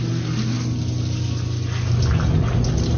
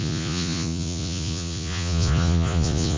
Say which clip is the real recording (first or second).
first